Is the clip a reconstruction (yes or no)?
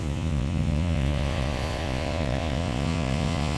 yes